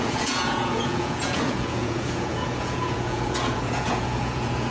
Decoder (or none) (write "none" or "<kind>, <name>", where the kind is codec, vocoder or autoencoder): vocoder, Vocos